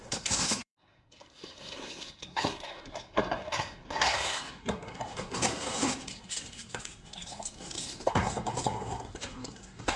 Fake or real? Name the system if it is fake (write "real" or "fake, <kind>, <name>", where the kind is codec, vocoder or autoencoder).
fake, codec, SNAC